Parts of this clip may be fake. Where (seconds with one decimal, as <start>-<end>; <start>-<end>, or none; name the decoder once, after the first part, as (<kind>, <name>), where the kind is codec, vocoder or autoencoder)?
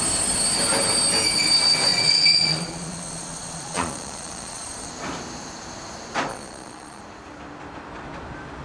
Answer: 1.9-4.9 (vocoder, Vocos); 6.3-7.0